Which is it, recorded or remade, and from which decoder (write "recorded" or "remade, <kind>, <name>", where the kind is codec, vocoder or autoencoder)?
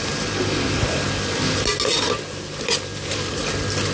recorded